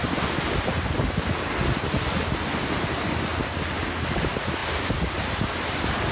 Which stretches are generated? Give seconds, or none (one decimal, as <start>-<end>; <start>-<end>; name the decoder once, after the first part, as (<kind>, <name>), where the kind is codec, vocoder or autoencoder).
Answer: none